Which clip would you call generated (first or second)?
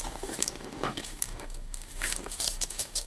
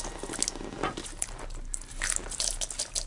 first